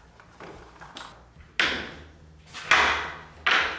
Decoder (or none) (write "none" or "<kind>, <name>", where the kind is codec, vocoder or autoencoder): none